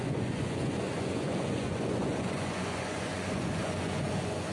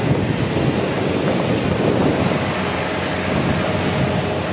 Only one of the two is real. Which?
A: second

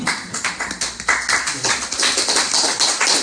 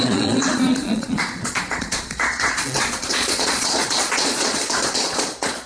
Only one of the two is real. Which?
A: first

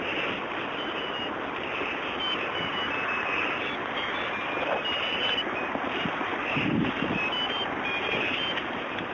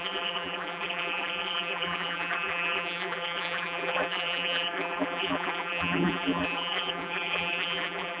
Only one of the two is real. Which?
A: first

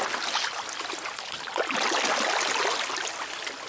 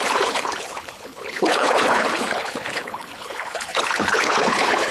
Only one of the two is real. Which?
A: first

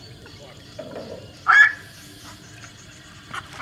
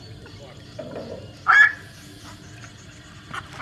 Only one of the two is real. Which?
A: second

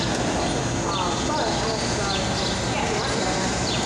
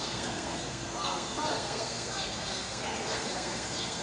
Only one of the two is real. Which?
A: first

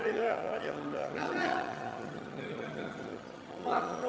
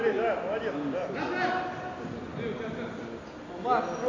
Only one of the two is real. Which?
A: second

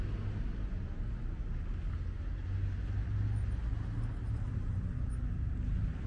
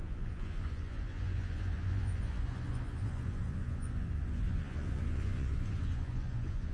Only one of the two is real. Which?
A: first